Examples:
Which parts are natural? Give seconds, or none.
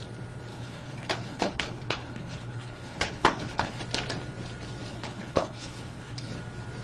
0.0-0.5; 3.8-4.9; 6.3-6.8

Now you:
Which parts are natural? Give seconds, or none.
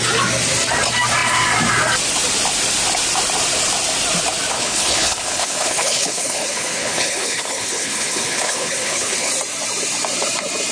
0.0-4.5; 9.3-10.7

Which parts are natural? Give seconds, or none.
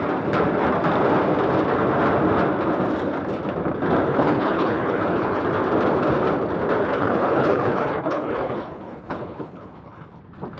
0.0-4.1; 5.4-6.8; 10.2-10.6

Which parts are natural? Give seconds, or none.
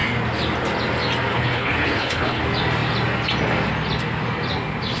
0.0-1.3; 2.4-5.0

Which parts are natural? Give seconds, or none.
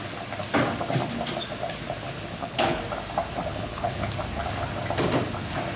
0.0-2.3; 2.8-3.5; 4.1-5.8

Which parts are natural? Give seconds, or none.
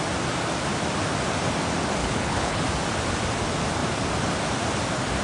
0.0-2.0; 2.6-5.2